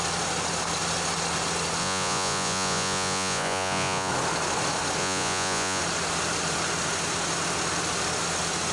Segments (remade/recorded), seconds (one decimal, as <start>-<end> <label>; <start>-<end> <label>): 0.0-1.8 recorded; 1.8-4.1 remade; 4.1-5.0 recorded; 5.0-5.8 remade; 5.8-8.7 recorded